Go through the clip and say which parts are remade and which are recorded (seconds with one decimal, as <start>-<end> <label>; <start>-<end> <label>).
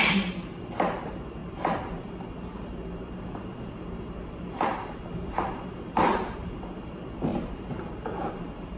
0.0-8.8 remade